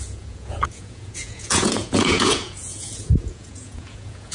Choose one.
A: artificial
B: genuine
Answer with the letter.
A